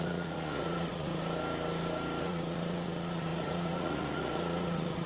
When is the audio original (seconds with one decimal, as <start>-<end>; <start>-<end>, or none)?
1.1-2.2